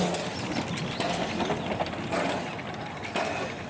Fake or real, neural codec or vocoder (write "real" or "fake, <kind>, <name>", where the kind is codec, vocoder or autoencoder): real